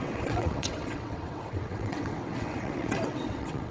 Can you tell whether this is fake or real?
fake